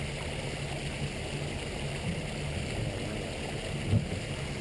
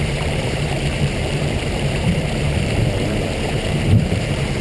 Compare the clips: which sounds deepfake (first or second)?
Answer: second